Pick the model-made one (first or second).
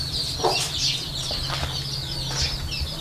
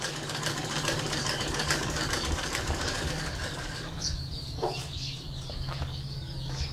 second